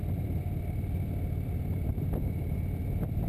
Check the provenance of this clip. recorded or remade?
remade